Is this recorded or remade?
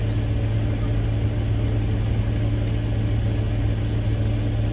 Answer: recorded